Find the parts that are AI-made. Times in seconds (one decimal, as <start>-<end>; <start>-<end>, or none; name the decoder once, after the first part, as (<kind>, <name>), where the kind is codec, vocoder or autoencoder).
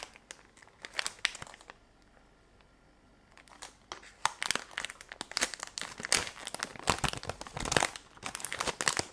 none